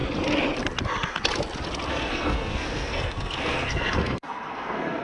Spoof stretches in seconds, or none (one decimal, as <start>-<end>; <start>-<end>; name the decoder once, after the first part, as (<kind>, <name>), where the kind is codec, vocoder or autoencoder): 1.9-5.0 (codec, SNAC)